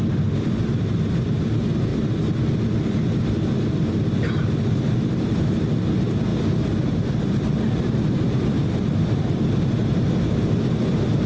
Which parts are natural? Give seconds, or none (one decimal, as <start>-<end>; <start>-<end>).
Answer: 0.0-11.3